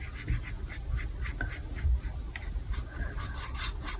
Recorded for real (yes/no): yes